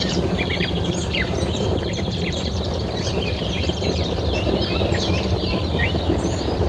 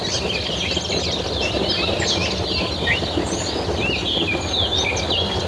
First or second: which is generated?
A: first